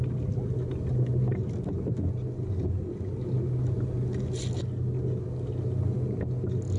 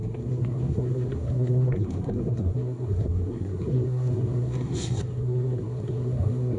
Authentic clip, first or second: first